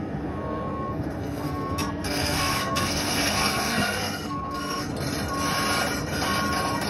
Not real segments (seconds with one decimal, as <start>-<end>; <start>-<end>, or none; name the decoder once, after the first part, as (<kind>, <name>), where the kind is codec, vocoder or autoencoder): 0.0-4.9 (codec, SNAC)